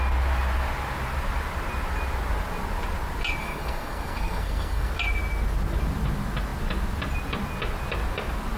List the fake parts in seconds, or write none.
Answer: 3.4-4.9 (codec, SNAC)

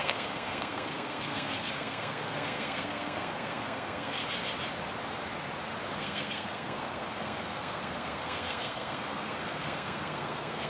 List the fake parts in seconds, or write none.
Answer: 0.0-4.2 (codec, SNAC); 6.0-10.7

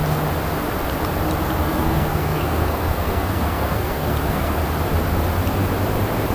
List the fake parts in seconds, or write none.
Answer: 1.6-4.6 (codec, SNAC)

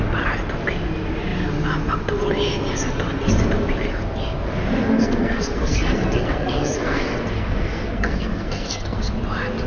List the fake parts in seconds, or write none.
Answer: 4.9-9.1 (codec, SNAC)